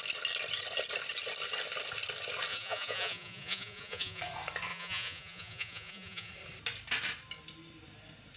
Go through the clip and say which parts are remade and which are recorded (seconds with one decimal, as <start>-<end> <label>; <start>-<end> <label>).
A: 0.0-2.5 recorded; 2.5-4.2 remade; 4.2-4.7 recorded; 4.7-6.3 remade; 6.3-8.4 recorded